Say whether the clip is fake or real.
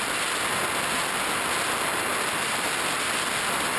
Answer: real